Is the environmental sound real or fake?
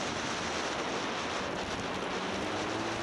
real